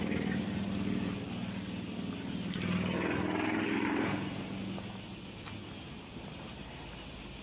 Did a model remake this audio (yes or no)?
no